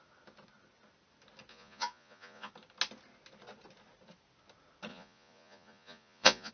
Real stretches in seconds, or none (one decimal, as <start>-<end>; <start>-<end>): 0.0-1.5; 2.5-4.9